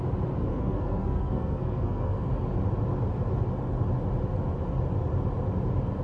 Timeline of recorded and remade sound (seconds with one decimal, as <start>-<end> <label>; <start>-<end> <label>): 0.0-0.5 recorded; 0.5-2.3 remade; 2.3-6.0 recorded